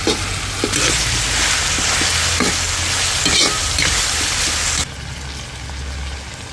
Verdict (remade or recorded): recorded